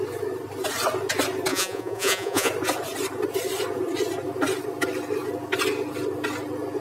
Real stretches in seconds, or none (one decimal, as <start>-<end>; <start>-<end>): 0.0-1.5; 2.5-6.8